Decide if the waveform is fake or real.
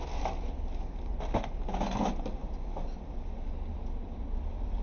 real